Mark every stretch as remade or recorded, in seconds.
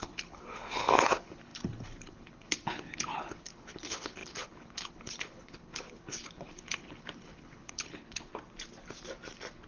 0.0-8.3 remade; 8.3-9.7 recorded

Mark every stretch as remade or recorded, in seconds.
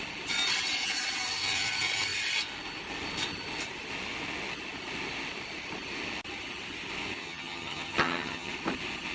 0.0-7.2 recorded; 7.2-8.5 remade; 8.5-9.1 recorded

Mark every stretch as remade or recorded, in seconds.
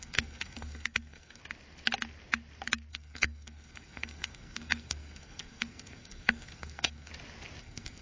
0.0-1.4 remade; 1.4-2.9 recorded; 2.9-7.1 remade; 7.1-7.6 recorded; 7.6-8.0 remade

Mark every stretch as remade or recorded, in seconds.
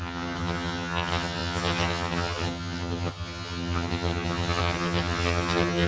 0.0-5.9 remade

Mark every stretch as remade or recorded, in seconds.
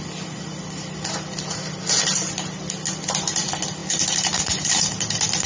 0.0-5.5 recorded